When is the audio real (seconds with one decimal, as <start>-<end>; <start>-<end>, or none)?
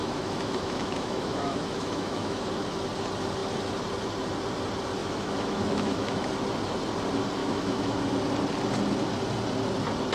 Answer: 2.4-5.0; 6.3-7.4; 8.0-10.1